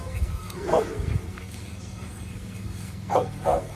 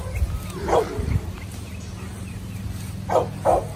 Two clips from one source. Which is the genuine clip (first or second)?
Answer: second